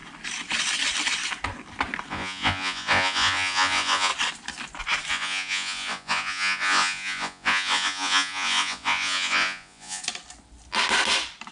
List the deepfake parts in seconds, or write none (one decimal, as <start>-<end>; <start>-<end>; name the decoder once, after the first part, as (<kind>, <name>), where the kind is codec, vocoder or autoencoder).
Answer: 2.1-4.1 (vocoder, Vocos); 5.1-10.0